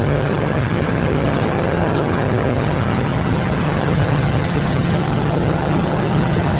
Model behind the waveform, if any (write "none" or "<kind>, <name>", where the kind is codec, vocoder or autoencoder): vocoder, HiFi-GAN